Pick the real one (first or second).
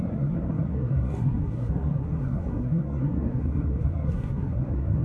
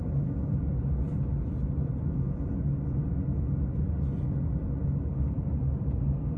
second